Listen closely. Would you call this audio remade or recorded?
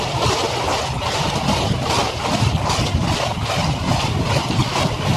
remade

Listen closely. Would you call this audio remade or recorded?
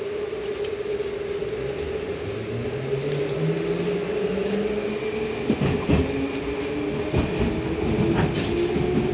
recorded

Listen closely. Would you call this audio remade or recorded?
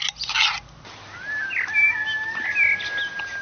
recorded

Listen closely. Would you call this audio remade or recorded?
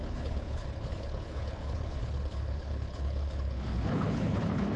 remade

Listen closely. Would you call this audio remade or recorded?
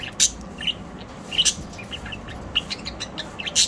recorded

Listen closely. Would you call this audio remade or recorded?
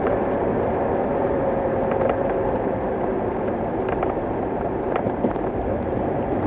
remade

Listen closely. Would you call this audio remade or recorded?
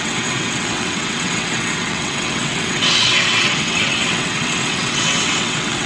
remade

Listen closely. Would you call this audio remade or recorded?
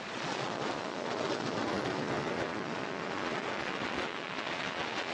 remade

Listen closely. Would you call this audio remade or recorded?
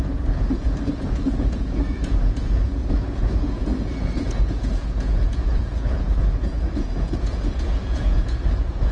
remade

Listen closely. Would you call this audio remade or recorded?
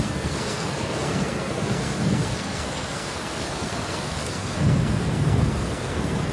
remade